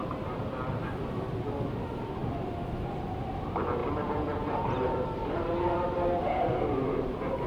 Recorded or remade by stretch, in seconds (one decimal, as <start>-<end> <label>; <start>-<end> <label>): 0.0-7.5 recorded